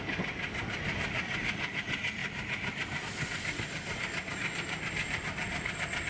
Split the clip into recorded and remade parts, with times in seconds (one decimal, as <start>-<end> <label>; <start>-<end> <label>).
0.0-2.2 recorded; 2.2-3.0 remade; 3.0-6.1 recorded

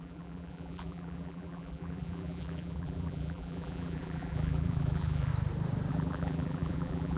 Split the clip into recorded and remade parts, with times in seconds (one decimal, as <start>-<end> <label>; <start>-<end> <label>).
0.0-5.3 remade; 5.3-5.9 recorded; 5.9-7.2 remade

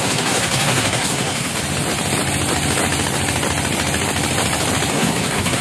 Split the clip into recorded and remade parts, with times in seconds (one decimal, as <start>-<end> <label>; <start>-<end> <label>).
0.0-1.5 remade; 1.5-4.9 recorded; 4.9-5.6 remade